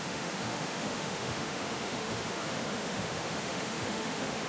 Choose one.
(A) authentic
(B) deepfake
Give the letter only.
B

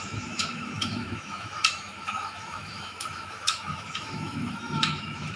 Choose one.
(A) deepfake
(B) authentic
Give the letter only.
A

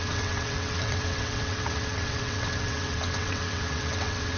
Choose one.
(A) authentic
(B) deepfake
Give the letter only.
B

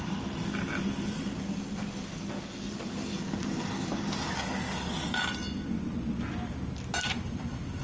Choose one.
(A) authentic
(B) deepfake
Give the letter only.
A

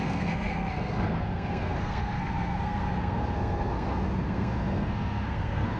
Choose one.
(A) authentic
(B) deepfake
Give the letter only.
B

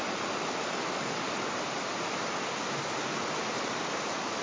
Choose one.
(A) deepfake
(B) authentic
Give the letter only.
B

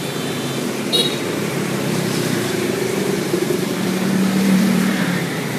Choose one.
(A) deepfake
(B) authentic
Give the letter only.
A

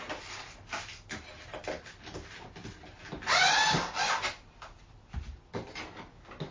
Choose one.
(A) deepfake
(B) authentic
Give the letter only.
B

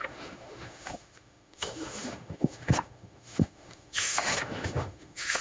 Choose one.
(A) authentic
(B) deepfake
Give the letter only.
B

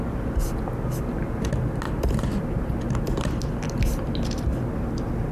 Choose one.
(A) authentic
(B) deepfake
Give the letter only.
A